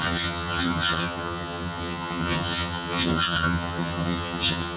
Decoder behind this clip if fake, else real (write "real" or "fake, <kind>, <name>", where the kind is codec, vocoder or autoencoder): fake, vocoder, HiFi-GAN